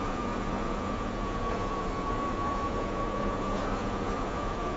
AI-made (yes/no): yes